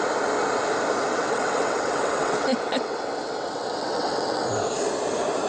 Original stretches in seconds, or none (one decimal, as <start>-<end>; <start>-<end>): 0.0-1.1; 4.4-5.5

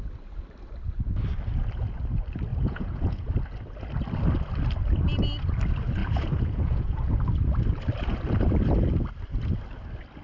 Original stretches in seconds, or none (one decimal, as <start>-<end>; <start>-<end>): 0.0-2.5; 3.3-6.0; 7.2-10.2

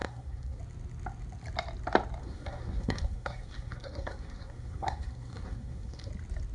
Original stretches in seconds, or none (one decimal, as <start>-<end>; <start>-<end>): 0.6-2.2; 6.1-6.5

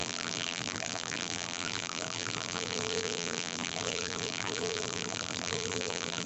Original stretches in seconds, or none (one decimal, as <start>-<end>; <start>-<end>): none

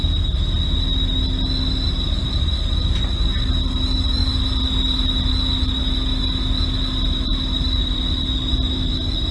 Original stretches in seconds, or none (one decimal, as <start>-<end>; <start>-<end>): 0.0-9.3

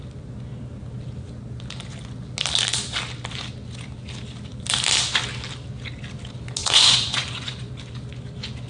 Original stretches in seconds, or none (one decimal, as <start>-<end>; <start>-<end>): 0.0-6.6; 7.7-8.7

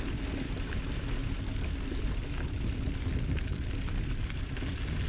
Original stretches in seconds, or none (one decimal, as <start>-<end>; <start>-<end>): 0.0-1.2; 4.3-5.1